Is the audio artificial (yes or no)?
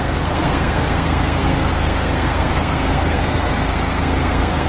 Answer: yes